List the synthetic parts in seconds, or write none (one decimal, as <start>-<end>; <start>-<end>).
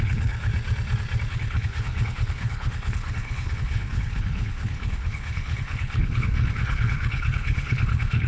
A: 0.0-0.5; 1.3-8.3